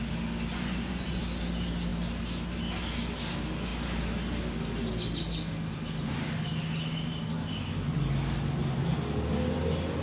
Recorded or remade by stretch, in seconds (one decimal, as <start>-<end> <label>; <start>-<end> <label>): 0.0-0.5 recorded; 0.5-1.2 remade; 1.2-10.0 recorded